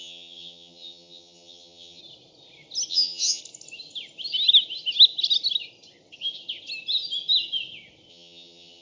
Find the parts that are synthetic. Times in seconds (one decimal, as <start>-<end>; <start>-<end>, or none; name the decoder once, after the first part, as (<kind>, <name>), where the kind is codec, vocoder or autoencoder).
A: 0.0-2.0 (vocoder, HiFi-GAN); 2.9-3.4; 8.1-8.8